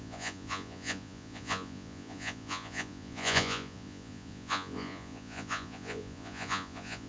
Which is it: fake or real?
fake